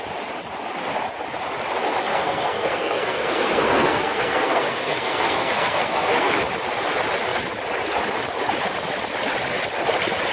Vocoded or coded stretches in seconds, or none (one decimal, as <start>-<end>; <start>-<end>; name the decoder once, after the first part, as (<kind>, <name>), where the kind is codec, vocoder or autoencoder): 2.1-6.3 (codec, SNAC)